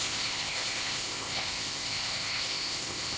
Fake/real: fake